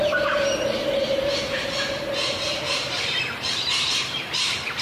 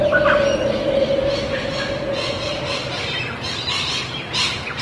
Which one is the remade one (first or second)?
first